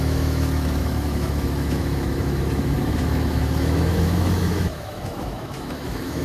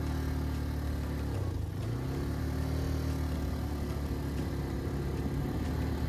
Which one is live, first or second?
second